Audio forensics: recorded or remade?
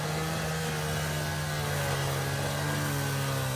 recorded